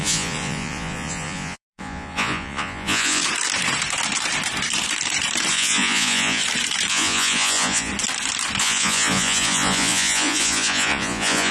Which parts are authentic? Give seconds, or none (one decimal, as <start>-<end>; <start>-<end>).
3.2-5.5; 6.4-6.9; 7.9-8.6